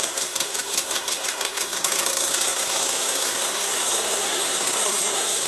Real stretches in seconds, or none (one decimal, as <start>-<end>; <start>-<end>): none